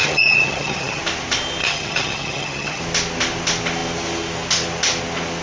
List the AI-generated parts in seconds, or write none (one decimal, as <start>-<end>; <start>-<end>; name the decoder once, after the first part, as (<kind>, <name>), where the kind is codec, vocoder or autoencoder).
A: 0.0-1.0 (vocoder, HiFi-GAN); 1.6-2.8